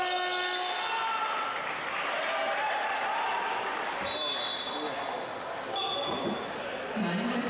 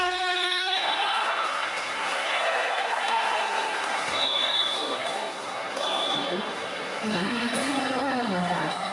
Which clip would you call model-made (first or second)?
second